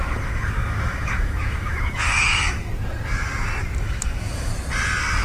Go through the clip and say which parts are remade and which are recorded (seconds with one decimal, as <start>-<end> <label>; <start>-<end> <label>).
0.0-2.7 remade; 2.7-3.8 recorded; 3.8-4.5 remade; 4.5-5.2 recorded